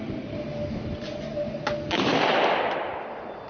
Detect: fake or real real